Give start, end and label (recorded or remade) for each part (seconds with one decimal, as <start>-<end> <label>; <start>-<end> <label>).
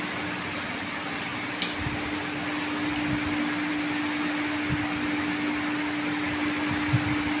0.0-7.4 recorded